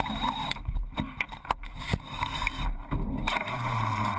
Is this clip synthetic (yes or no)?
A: yes